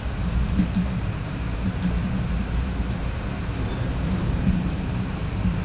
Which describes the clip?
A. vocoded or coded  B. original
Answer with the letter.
A